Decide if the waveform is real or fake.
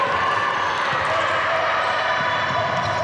real